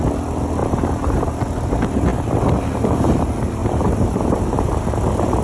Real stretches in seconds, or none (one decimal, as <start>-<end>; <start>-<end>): 0.0-0.6; 1.4-3.6; 4.8-5.4